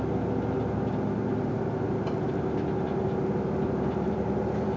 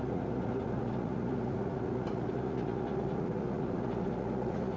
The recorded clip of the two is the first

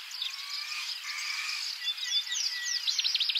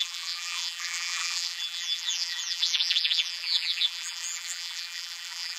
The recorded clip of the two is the first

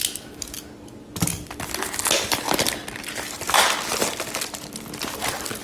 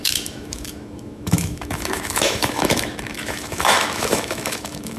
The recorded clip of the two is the first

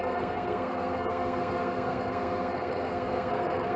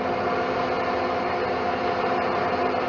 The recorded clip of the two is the second